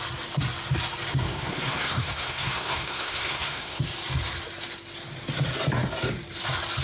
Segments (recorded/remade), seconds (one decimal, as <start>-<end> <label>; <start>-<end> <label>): 0.0-1.1 recorded; 1.1-3.8 remade; 3.8-6.8 recorded